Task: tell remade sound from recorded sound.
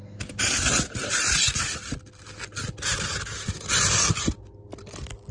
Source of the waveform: recorded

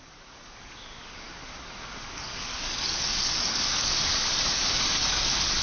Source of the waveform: remade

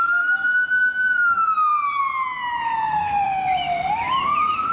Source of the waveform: remade